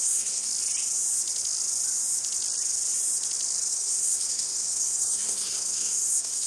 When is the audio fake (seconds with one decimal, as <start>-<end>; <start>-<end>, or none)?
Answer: 0.0-0.5; 3.7-6.5